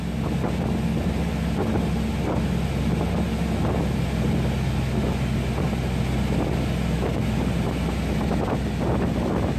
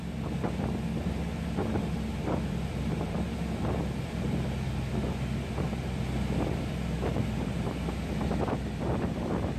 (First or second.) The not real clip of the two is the second